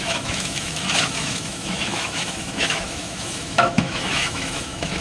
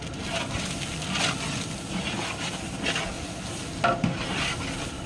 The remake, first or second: first